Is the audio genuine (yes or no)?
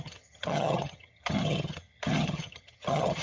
no